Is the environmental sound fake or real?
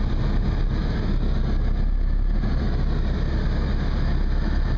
real